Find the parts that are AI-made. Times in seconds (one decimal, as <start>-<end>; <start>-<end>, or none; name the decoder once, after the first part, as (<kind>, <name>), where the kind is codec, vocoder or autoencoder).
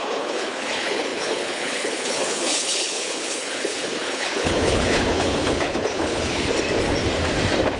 0.0-6.5 (codec, HILCodec)